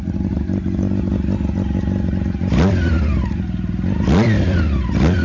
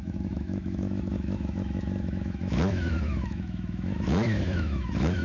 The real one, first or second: first